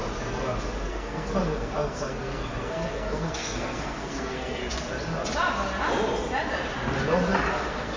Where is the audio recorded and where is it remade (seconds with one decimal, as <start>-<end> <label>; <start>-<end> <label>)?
0.0-0.9 recorded; 0.9-4.6 remade; 4.6-7.5 recorded; 7.5-8.0 remade